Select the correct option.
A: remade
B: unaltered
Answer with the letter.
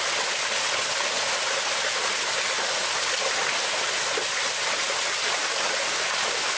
B